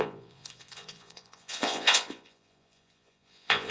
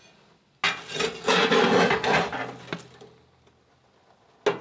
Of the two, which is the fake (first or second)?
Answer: first